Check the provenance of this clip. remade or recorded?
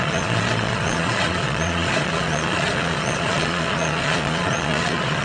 remade